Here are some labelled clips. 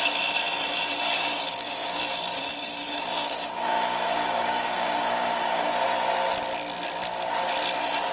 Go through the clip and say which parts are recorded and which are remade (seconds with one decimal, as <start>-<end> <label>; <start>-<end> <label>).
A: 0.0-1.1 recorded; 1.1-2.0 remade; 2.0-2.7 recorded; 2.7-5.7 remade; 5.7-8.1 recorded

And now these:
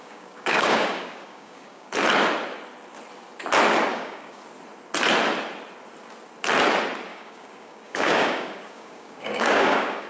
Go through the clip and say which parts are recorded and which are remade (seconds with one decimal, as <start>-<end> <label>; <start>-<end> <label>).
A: 0.0-1.9 remade; 1.9-3.9 recorded; 3.9-4.4 remade; 4.4-7.1 recorded; 7.1-10.1 remade

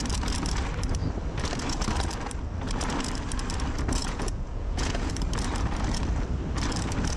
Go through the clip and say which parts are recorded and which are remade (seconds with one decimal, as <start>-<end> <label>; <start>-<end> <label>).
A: 0.0-4.0 recorded; 4.0-5.1 remade; 5.1-7.2 recorded

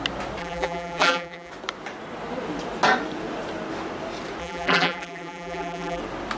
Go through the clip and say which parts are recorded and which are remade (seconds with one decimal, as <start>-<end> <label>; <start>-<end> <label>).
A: 0.0-0.4 recorded; 0.4-1.5 remade; 1.5-4.4 recorded; 4.4-6.0 remade; 6.0-6.4 recorded